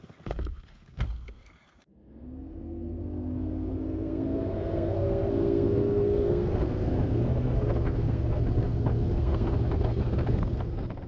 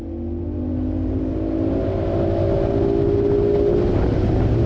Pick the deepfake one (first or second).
first